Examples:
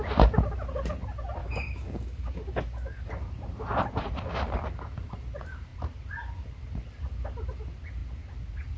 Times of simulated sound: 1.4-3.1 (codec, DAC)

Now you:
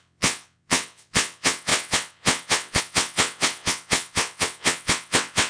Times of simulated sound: 0.0-5.5 (vocoder, WaveNeXt)

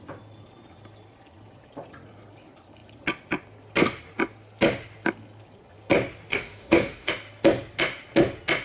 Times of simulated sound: 6.3-7.1 (autoencoder, DAC-VAE)